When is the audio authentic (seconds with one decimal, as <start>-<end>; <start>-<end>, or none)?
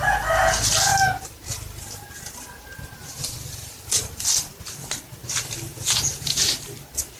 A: 0.0-5.7; 6.5-7.2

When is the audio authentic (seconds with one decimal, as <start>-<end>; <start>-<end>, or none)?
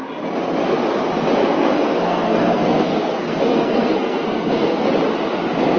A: 0.0-1.4; 4.9-5.8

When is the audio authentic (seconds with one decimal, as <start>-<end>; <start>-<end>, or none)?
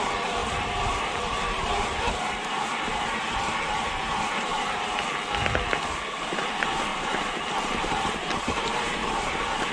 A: 0.0-0.4; 5.0-6.9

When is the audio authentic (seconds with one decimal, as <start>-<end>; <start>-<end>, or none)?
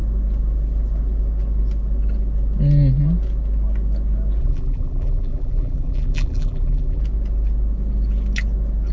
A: 0.0-4.4; 7.0-8.9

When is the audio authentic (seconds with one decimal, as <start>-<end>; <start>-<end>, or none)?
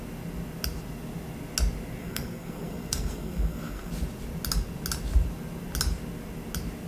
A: 0.0-2.0; 3.9-6.9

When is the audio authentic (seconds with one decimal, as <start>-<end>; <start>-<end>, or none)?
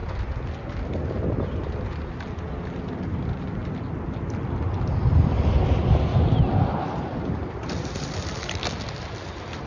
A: 0.0-2.9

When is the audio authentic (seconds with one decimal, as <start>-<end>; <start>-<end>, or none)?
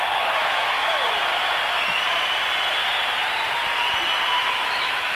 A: 1.3-4.4